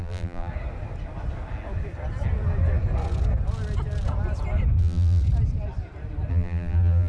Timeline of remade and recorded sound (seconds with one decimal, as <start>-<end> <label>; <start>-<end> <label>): 0.0-0.5 remade; 0.5-4.8 recorded; 4.8-5.2 remade; 5.2-6.3 recorded; 6.3-7.1 remade